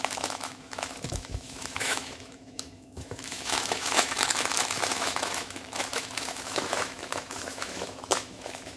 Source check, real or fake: fake